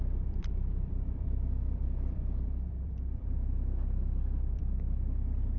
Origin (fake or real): fake